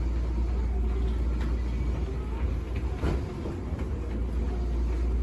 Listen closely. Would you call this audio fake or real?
real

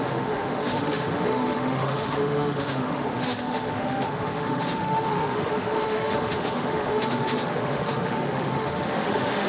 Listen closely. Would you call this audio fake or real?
fake